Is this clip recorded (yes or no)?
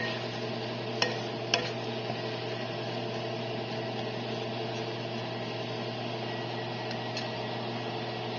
yes